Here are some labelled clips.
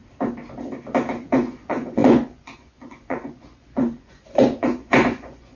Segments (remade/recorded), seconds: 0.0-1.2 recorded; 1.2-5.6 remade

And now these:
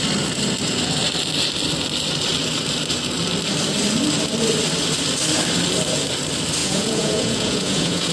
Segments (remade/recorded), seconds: 0.0-6.6 recorded; 6.6-8.1 remade

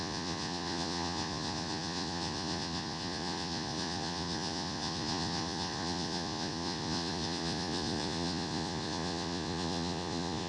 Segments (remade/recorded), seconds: 0.0-10.5 remade

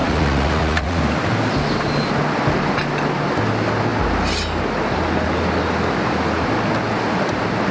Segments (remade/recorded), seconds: 0.0-1.0 remade; 1.0-7.7 recorded

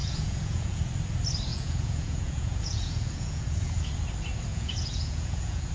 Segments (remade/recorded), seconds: 0.0-0.8 remade; 0.8-1.5 recorded; 1.5-3.9 remade; 3.9-4.5 recorded; 4.5-5.7 remade